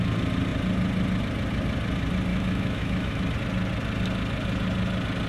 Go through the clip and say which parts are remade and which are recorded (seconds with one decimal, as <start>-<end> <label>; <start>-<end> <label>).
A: 0.0-2.3 recorded; 2.3-3.2 remade; 3.2-5.3 recorded